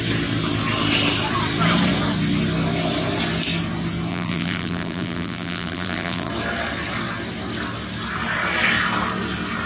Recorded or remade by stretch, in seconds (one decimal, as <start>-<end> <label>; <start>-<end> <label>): 0.0-4.1 recorded; 4.1-6.3 remade; 6.3-9.7 recorded